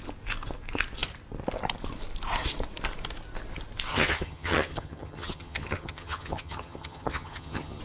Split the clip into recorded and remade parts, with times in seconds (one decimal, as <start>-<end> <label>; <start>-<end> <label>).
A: 0.0-3.9 recorded; 3.9-7.8 remade